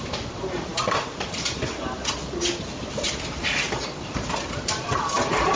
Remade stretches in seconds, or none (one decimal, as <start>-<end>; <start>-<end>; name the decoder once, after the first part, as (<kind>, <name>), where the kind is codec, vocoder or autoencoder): none